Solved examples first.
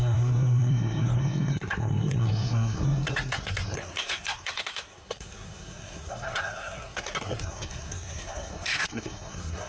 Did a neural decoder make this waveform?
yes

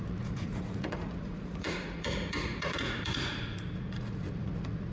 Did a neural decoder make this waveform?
yes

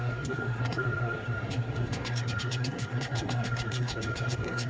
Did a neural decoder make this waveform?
yes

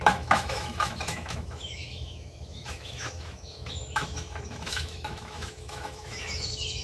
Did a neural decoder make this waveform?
yes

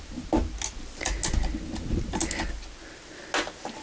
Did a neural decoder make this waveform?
no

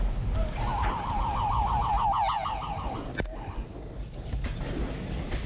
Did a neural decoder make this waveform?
no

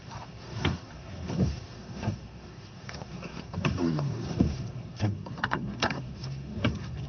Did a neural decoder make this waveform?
yes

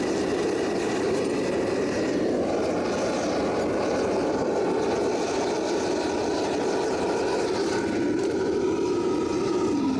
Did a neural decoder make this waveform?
no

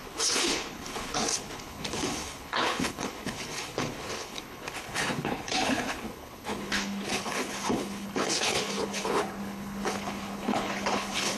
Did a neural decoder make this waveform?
yes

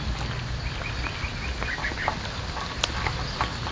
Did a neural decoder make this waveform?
no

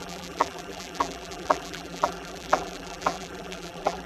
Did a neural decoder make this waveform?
yes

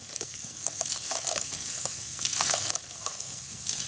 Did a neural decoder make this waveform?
yes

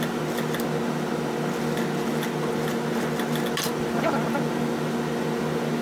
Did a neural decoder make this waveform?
no